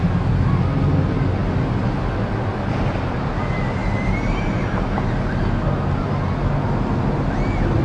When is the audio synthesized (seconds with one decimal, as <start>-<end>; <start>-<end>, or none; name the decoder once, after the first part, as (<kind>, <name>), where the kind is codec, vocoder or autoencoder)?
3.8-4.6 (vocoder, BigVGAN v2)